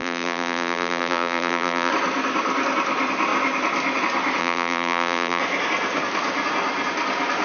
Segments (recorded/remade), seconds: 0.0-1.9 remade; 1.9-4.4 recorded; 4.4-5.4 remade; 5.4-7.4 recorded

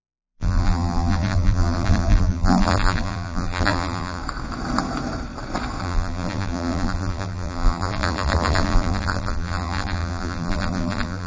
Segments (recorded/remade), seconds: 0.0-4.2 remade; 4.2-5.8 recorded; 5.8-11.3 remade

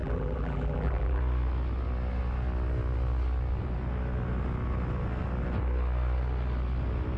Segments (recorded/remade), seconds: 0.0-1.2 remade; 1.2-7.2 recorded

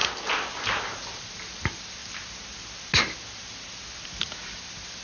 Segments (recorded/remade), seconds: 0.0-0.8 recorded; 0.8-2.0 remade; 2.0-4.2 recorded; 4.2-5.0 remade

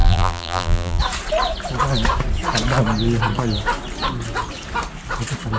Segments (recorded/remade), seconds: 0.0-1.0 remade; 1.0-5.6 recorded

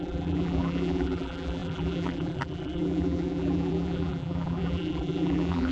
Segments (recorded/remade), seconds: 0.0-5.7 remade